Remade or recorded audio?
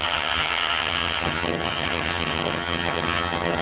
remade